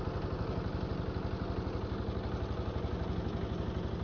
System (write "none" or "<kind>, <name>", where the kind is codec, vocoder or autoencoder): none